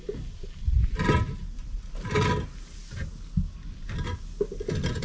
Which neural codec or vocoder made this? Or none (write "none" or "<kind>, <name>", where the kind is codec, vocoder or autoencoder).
none